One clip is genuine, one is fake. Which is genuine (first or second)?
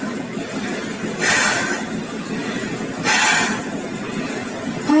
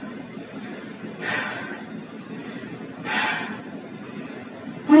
first